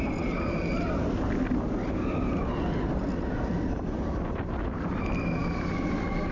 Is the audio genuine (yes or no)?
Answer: yes